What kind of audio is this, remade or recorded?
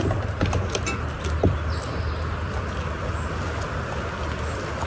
recorded